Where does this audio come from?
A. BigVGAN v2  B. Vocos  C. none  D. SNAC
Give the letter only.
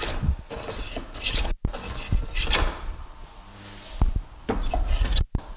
C